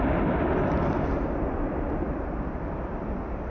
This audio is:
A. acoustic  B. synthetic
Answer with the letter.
B